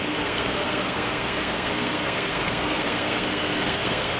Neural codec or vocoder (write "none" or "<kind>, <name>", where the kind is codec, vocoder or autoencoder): codec, SNAC